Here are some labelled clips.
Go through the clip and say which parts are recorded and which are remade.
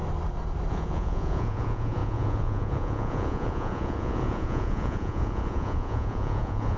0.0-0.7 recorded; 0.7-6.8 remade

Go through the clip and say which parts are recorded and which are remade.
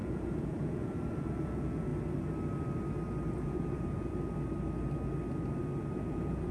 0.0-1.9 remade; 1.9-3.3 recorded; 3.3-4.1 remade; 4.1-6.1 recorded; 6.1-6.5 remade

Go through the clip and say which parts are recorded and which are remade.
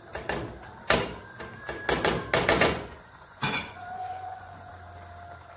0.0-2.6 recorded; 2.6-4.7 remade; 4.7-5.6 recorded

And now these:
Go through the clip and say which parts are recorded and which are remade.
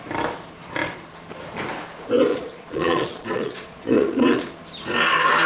0.0-2.3 recorded; 2.3-4.5 remade; 4.5-5.5 recorded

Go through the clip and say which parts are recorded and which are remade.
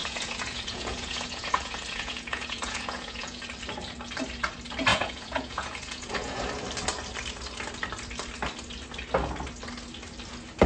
0.0-3.4 remade; 3.4-4.9 recorded; 4.9-6.4 remade; 6.4-10.7 recorded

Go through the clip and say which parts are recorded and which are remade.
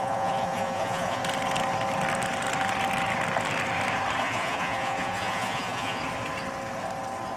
0.0-1.2 remade; 1.2-4.2 recorded; 4.2-6.0 remade; 6.0-7.4 recorded